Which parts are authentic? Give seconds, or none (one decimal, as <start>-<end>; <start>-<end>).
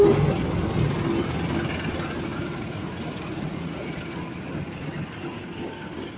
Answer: 0.0-2.3; 4.0-6.2